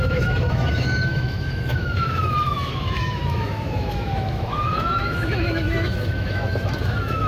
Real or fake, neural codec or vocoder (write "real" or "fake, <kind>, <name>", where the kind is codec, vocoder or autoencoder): fake, autoencoder, DAC-VAE